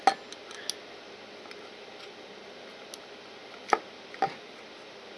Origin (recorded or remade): recorded